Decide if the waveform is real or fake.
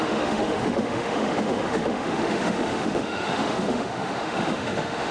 fake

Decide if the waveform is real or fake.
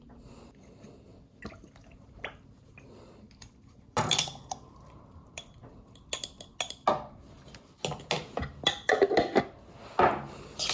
real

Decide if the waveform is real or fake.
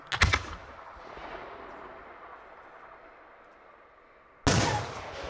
real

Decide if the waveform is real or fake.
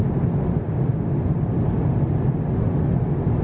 real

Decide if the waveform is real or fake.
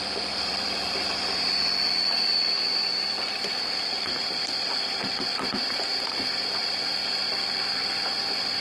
fake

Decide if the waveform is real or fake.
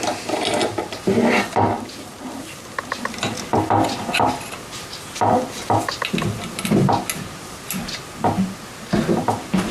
real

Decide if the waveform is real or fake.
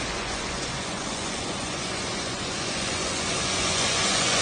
fake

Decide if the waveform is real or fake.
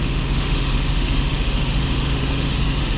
fake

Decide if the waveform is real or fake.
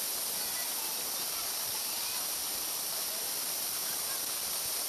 real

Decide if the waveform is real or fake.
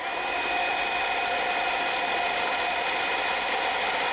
real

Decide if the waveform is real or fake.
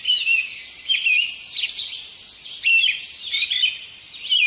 real